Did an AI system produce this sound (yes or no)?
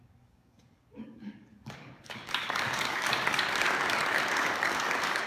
yes